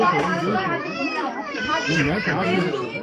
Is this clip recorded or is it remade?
remade